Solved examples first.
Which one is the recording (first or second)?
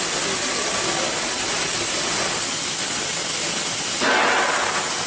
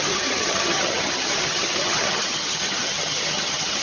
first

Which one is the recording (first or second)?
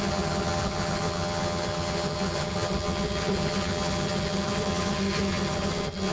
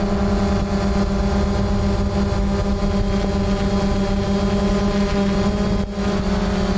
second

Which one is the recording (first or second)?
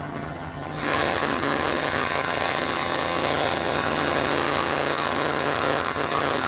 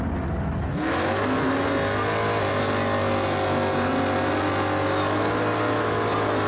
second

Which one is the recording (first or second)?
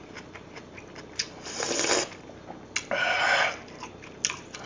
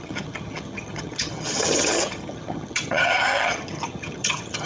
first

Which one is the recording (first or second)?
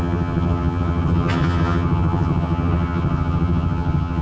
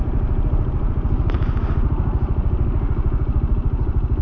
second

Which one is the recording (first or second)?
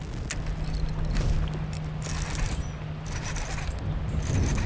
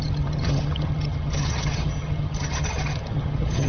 first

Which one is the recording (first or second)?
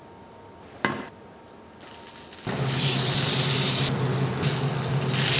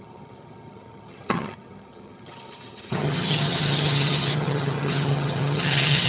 first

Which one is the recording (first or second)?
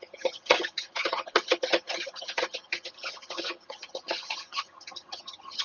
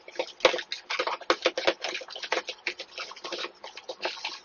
second